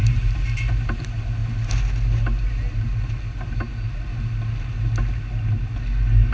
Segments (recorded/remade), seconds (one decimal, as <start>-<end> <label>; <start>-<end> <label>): 0.0-0.7 remade; 0.7-6.3 recorded